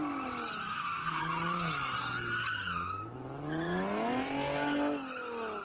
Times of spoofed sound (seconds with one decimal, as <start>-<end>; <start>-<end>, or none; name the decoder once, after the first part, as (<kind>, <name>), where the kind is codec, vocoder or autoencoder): 0.7-1.2 (codec, SNAC)

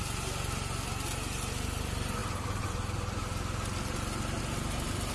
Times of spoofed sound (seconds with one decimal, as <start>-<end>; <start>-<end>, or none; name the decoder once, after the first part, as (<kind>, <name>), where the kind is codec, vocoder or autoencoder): none

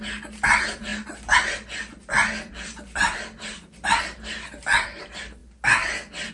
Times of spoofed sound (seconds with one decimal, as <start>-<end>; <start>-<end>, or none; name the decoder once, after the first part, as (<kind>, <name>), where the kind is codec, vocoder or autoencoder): none

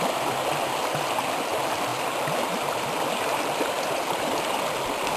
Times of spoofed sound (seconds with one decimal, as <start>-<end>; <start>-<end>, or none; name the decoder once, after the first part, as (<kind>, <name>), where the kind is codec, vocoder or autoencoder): none